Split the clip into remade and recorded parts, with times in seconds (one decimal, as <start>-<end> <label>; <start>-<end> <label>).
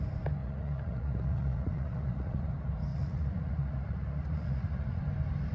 0.0-0.4 recorded; 0.4-2.5 remade; 2.5-2.9 recorded; 2.9-5.0 remade; 5.0-5.5 recorded